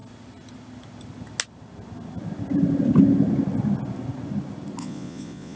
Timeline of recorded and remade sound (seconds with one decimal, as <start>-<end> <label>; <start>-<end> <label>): 0.0-4.8 recorded; 4.8-5.6 remade